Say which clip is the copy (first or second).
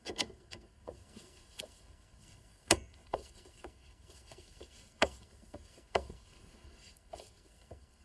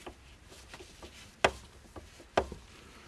first